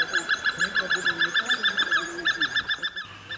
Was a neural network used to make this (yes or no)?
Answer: no